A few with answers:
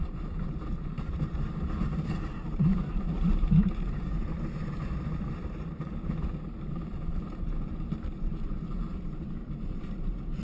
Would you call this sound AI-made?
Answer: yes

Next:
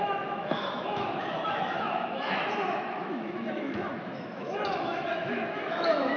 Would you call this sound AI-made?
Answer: yes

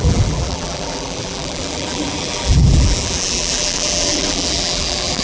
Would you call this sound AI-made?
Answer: yes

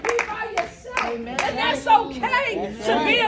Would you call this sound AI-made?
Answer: no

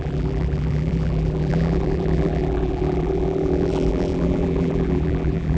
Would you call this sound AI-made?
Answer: yes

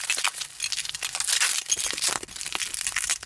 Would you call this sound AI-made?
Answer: no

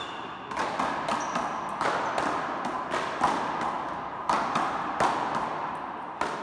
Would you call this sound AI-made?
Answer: no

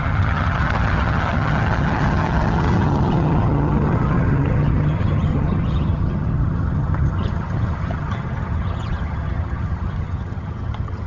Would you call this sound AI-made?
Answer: yes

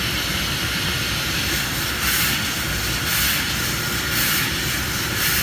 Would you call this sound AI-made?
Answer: no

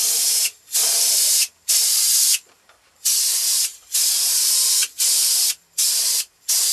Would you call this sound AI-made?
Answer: yes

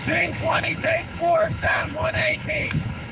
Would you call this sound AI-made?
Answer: yes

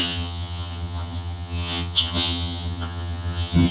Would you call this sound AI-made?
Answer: yes